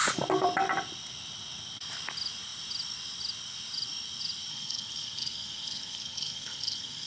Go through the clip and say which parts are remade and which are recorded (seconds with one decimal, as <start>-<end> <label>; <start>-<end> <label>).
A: 0.0-4.5 recorded; 4.5-7.1 remade